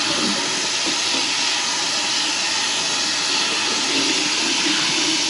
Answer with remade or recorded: recorded